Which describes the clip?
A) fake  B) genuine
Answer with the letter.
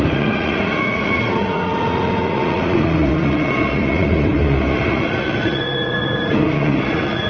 A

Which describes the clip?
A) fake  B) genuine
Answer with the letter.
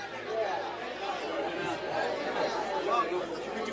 B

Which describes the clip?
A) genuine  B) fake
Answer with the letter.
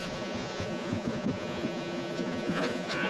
B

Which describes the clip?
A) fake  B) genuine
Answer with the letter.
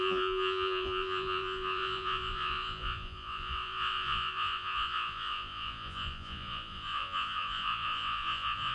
A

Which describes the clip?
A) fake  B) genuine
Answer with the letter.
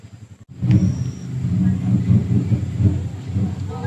B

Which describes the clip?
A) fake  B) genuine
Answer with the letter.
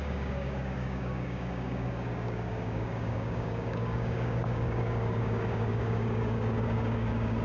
A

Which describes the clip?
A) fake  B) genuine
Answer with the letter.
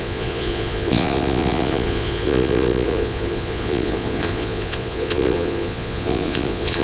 A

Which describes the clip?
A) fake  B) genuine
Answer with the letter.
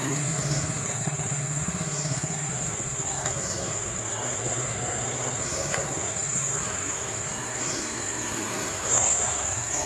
A